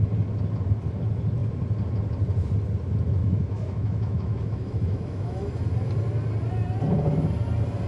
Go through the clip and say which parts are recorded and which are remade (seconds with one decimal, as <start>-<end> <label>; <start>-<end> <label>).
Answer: 0.0-3.2 recorded; 3.2-5.5 remade; 5.5-7.9 recorded